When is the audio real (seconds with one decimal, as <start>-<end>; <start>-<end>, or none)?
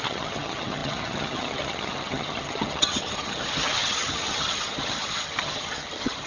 none